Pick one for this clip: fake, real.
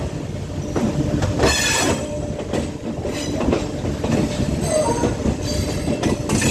real